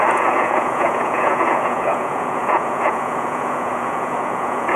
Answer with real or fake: fake